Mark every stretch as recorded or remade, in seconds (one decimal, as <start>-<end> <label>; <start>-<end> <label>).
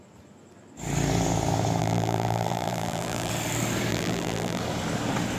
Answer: 0.0-1.8 recorded; 1.8-3.3 remade; 3.3-3.9 recorded; 3.9-4.6 remade; 4.6-5.4 recorded